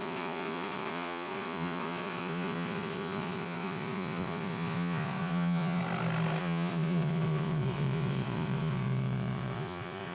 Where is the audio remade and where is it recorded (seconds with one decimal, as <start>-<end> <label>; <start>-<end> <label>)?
0.0-5.8 remade; 5.8-6.4 recorded; 6.4-10.1 remade